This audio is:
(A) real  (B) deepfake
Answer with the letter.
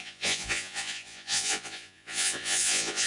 B